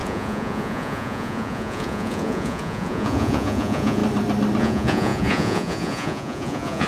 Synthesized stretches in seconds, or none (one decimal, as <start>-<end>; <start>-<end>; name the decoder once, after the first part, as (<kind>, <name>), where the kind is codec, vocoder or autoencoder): 0.0-4.0 (vocoder, Vocos); 4.6-6.9